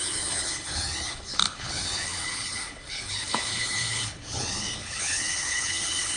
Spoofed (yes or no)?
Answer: yes